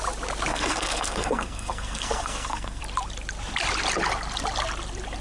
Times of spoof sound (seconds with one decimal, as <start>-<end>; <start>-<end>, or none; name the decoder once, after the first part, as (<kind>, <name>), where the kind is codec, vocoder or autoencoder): 0.5-2.8 (codec, SNAC)